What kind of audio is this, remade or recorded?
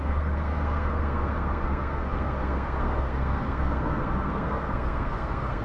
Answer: remade